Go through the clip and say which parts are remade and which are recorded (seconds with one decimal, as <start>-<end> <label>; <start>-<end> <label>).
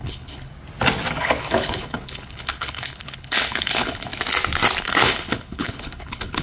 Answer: 0.0-0.5 remade; 0.5-1.1 recorded; 1.1-4.1 remade; 4.1-4.8 recorded; 4.8-6.4 remade